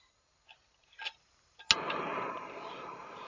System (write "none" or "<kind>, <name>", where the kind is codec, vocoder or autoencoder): none